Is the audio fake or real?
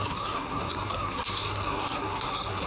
fake